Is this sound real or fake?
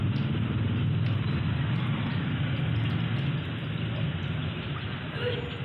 real